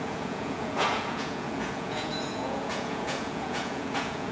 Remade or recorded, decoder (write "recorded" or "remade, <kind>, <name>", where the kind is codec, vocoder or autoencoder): remade, vocoder, Vocos